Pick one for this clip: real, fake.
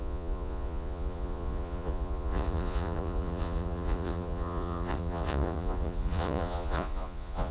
fake